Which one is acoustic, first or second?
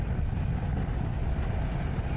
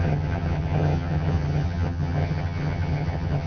first